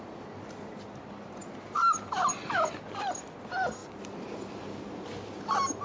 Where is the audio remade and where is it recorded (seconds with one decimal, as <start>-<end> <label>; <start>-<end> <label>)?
0.0-5.8 recorded

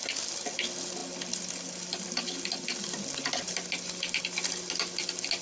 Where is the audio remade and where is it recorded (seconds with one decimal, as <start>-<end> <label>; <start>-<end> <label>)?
0.0-5.4 recorded

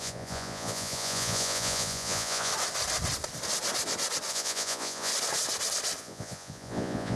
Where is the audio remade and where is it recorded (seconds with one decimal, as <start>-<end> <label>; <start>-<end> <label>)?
0.0-2.5 remade; 2.5-4.3 recorded; 4.3-5.1 remade; 5.1-6.0 recorded; 6.0-7.2 remade

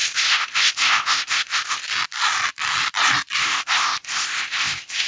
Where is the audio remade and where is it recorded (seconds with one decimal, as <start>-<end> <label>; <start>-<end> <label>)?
0.0-1.8 remade; 1.8-3.4 recorded; 3.4-5.1 remade

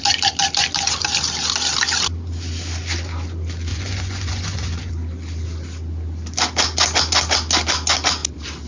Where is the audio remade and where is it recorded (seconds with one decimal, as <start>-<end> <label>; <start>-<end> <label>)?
0.0-3.7 recorded; 3.7-4.9 remade; 4.9-8.7 recorded

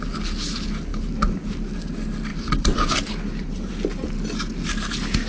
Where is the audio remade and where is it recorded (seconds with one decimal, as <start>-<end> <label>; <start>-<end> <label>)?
0.0-0.9 recorded; 0.9-1.5 remade; 1.5-2.3 recorded; 2.3-3.7 remade; 3.7-5.3 recorded

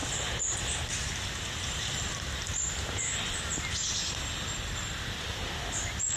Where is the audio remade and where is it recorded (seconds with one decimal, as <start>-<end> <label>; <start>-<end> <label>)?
0.0-3.7 remade; 3.7-6.2 recorded

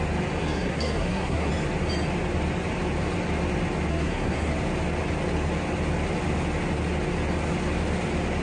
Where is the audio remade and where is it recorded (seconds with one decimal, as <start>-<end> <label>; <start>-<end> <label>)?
0.0-0.4 recorded; 0.4-1.5 remade; 1.5-3.9 recorded; 3.9-4.5 remade; 4.5-8.4 recorded